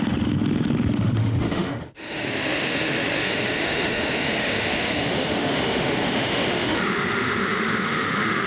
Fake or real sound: fake